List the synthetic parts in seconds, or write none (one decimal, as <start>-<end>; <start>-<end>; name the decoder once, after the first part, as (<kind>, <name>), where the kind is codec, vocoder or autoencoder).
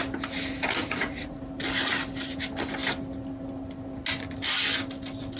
0.8-1.4 (vocoder, Vocos)